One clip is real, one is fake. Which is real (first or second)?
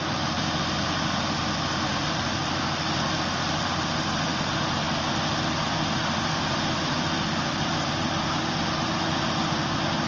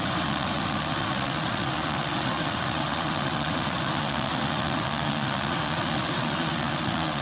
first